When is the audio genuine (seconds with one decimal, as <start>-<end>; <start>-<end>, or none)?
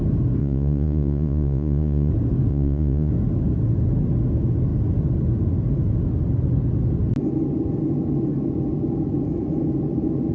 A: 0.0-0.4; 2.1-2.5; 3.1-10.3